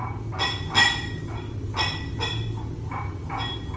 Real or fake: real